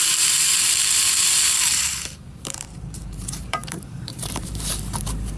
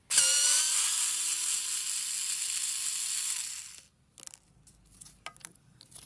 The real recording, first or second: second